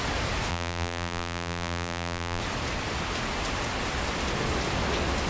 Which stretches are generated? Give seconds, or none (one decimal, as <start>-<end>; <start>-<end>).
0.5-2.4